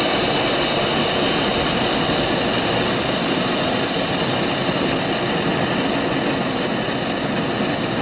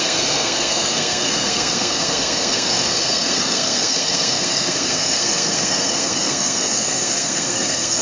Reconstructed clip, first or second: second